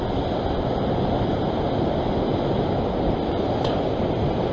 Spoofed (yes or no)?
no